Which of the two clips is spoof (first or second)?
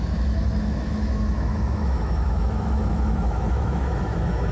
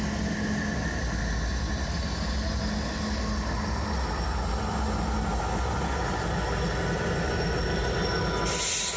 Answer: first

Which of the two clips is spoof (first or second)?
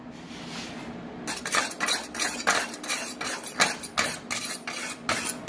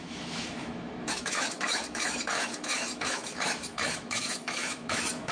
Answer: second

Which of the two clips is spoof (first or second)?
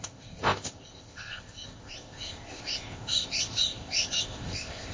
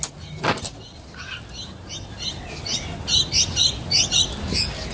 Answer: first